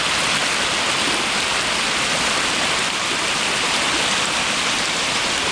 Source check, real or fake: real